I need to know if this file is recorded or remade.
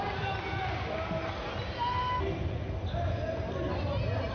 recorded